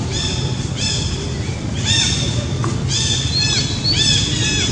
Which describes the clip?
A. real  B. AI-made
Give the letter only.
A